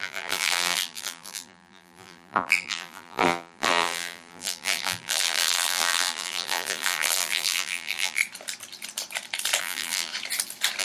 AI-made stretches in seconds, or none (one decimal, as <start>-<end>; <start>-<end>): 0.0-8.2; 9.6-10.1